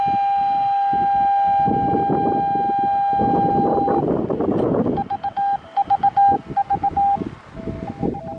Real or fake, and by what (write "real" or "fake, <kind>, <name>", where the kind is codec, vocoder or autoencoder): real